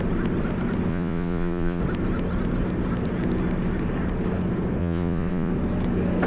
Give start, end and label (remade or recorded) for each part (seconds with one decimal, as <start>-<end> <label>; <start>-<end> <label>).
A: 0.0-0.9 recorded; 0.9-1.8 remade; 1.8-4.8 recorded; 4.8-5.5 remade; 5.5-6.3 recorded